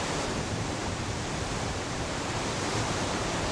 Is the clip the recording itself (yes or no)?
no